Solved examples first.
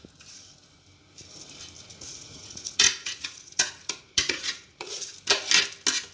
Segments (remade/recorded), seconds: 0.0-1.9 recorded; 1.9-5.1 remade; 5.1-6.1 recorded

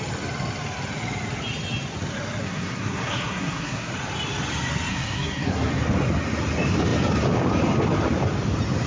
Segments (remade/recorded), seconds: 0.0-2.4 recorded; 2.4-3.9 remade; 3.9-4.9 recorded; 4.9-5.7 remade; 5.7-8.9 recorded

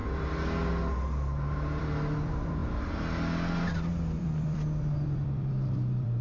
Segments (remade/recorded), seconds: 0.0-1.8 recorded; 1.8-2.6 remade; 2.6-4.2 recorded; 4.2-6.2 remade

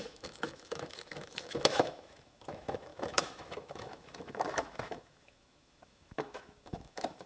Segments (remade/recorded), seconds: 0.0-7.3 remade

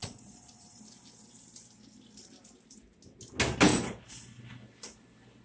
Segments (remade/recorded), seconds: 0.0-0.8 remade; 0.8-5.4 recorded